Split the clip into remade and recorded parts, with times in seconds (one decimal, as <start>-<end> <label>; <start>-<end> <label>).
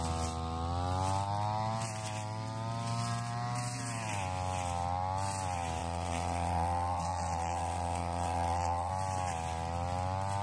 0.0-5.8 recorded; 5.8-8.9 remade; 8.9-10.4 recorded